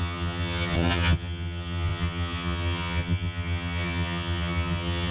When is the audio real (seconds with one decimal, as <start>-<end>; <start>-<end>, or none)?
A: none